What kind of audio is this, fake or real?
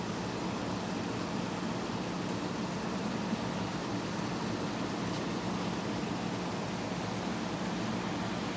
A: real